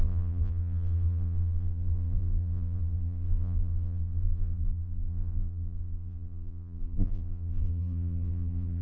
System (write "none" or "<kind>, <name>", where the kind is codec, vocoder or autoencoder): vocoder, BigVGAN v2